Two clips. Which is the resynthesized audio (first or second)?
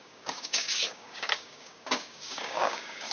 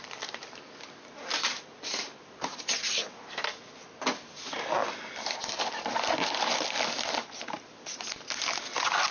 first